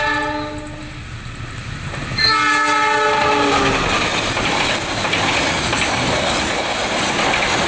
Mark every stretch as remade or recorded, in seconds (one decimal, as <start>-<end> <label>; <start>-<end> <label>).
0.0-7.7 recorded